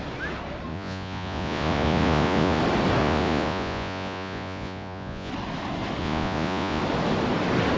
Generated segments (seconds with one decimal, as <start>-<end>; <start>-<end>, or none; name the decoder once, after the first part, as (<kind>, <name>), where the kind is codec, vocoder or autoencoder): 0.7-2.6 (vocoder, Vocos); 3.0-5.3; 6.0-6.8